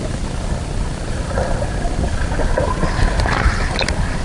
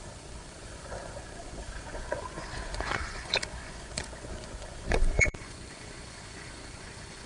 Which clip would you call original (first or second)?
first